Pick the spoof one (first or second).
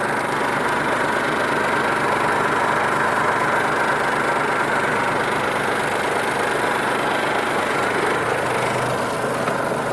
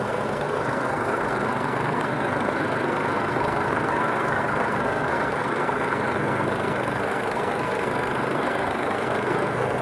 second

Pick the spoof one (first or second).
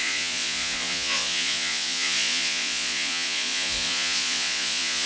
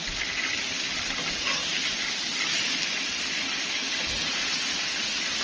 first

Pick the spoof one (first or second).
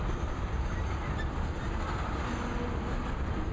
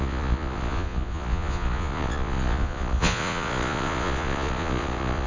second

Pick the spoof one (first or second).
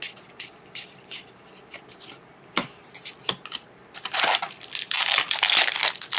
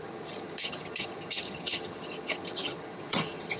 second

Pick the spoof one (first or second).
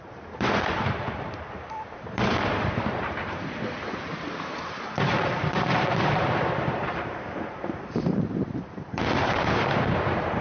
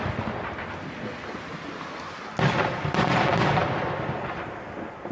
first